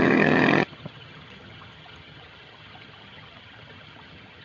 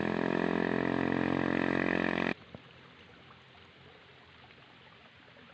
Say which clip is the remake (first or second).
first